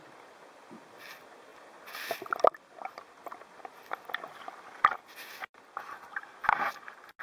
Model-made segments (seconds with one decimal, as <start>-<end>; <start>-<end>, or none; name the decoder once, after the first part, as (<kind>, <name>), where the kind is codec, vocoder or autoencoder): none